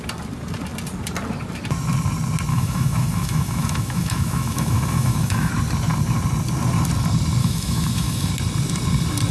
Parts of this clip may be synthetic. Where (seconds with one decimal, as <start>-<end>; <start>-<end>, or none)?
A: 2.5-5.5; 7.4-8.3